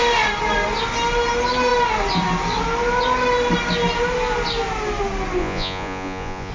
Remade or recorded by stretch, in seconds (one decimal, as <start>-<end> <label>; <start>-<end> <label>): 0.0-5.4 recorded; 5.4-6.5 remade